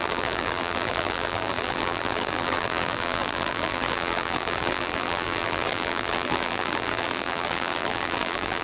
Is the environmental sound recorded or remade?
remade